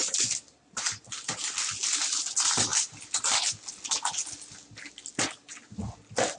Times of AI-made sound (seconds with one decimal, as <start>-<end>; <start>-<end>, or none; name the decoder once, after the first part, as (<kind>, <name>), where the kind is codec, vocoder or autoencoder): 0.0-1.5 (vocoder, BigVGAN v2)